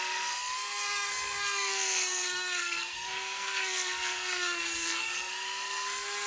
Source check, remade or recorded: remade